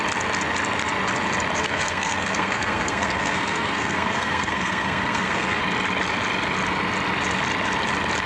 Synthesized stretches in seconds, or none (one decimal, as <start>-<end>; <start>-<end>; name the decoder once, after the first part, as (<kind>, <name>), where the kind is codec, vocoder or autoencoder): 1.6-5.6 (codec, SNAC)